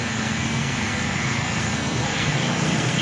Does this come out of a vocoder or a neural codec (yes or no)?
yes